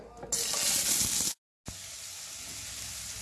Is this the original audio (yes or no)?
yes